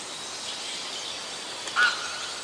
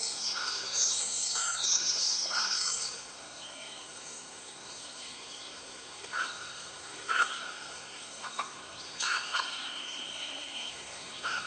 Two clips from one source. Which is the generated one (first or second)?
second